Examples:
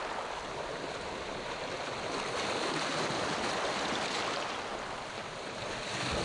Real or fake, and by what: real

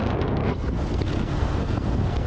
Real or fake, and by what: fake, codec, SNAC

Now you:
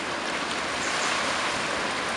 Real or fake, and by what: real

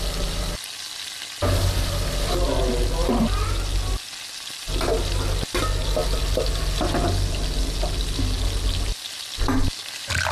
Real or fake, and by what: real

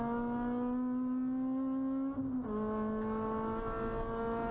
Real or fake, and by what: real